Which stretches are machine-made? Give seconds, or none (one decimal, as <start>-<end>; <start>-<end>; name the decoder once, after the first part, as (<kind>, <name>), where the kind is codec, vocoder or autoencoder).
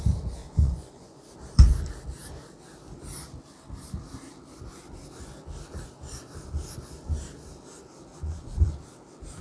0.4-1.3 (vocoder, Vocos); 8.1-8.7